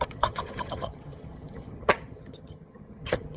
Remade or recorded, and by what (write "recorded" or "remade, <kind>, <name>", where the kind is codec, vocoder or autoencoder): remade, vocoder, HiFi-GAN